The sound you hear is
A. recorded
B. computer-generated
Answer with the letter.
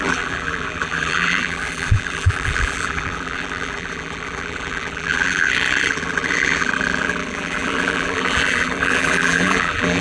B